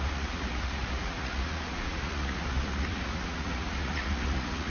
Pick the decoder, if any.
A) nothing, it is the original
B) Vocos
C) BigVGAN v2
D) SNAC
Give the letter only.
B